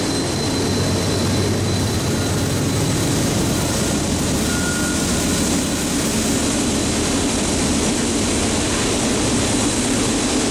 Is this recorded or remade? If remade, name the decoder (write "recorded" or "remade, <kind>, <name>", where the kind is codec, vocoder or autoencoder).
recorded